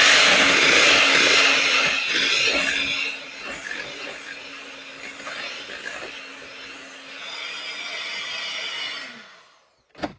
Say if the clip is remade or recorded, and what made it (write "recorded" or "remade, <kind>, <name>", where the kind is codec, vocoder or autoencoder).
recorded